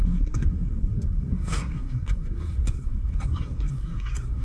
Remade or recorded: remade